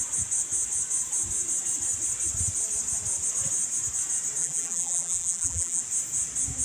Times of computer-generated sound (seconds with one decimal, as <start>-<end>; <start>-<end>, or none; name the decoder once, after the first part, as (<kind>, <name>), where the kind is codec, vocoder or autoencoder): 4.4-5.8 (vocoder, BigVGAN v2)

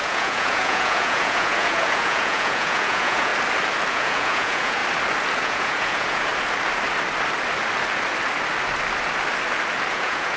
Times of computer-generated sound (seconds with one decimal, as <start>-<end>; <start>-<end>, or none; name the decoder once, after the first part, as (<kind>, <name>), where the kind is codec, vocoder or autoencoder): 0.0-3.3 (vocoder, Vocos); 3.9-4.8; 5.4-6.3; 9.9-10.4

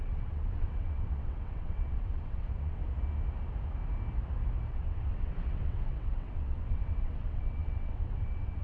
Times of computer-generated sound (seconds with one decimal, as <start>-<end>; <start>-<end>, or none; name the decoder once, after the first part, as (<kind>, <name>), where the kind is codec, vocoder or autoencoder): 0.0-2.8 (vocoder, WaveNeXt); 4.7-8.6

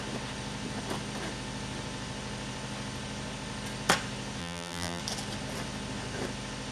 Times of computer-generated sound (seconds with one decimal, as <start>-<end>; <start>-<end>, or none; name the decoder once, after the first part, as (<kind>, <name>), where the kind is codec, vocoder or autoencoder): 4.4-5.0 (vocoder, BigVGAN v2)

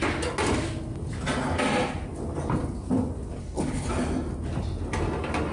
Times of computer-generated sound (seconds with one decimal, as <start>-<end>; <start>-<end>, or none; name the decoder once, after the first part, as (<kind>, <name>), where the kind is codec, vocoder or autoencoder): 3.4-3.9 (codec, HILCodec)

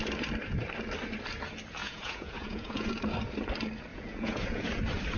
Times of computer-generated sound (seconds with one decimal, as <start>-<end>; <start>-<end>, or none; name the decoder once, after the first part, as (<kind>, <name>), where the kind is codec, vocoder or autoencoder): 1.8-2.9 (vocoder, Vocos); 3.9-4.7

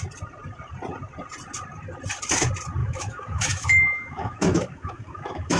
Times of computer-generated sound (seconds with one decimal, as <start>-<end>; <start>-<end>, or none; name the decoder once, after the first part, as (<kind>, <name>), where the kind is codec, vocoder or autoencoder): 2.8-5.6 (autoencoder, DAC-VAE)